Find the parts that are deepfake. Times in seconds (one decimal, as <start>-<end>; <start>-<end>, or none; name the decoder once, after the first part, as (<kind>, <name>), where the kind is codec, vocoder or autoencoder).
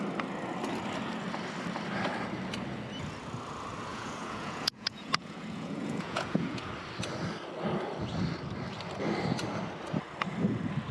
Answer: 3.9-6.7 (vocoder, Vocos)